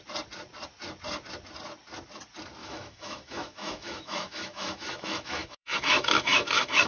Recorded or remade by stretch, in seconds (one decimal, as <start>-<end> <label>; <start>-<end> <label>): 0.0-2.6 recorded; 2.6-6.9 remade